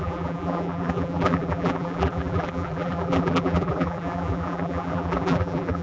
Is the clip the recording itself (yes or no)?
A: no